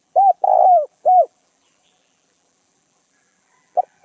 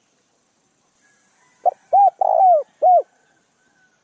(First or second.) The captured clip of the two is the second